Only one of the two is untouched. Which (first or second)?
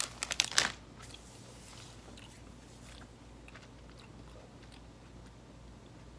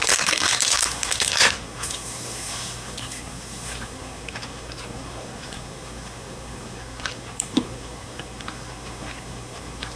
first